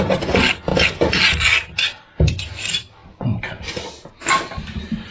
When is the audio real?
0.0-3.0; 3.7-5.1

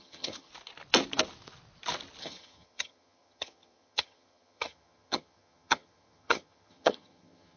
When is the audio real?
0.5-2.2

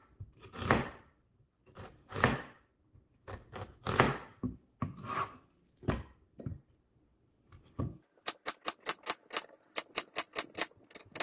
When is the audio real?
0.0-11.2